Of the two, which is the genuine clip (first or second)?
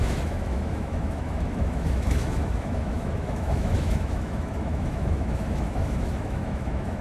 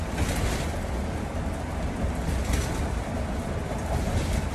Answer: second